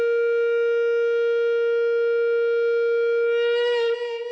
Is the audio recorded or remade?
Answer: recorded